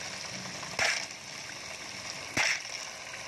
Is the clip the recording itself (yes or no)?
yes